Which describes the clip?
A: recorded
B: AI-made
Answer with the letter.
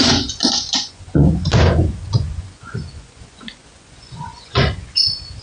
B